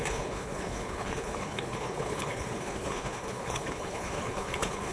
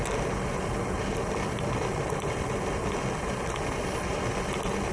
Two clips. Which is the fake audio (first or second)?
first